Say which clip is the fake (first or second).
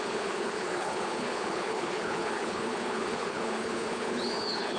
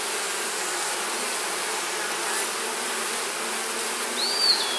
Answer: first